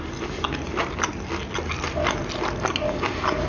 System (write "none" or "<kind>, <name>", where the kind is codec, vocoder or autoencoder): none